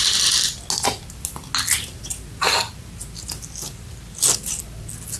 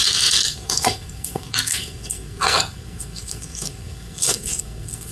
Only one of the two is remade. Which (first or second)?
second